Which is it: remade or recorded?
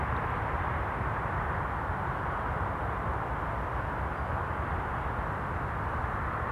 recorded